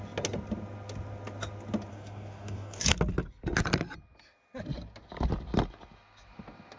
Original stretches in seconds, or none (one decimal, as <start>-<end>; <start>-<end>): 0.0-1.9; 2.8-6.8